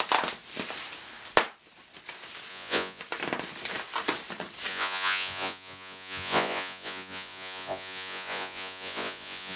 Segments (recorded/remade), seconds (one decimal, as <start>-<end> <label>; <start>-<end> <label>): 0.0-2.5 recorded; 2.5-3.0 remade; 3.0-4.7 recorded; 4.7-9.6 remade